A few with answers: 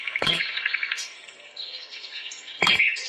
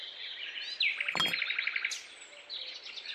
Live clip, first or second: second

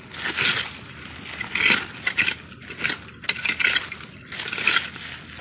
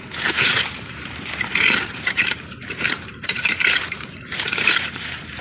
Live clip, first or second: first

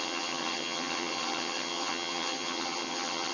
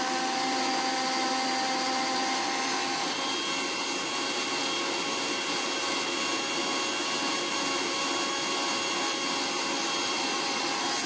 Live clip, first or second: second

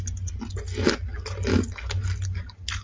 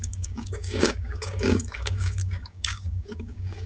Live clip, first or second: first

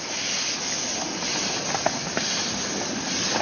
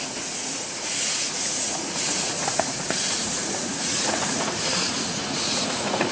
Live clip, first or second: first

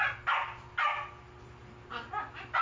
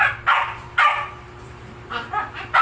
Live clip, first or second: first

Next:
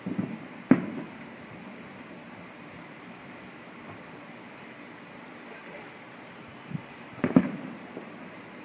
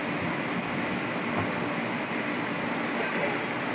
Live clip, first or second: second